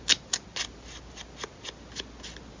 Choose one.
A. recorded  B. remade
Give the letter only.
A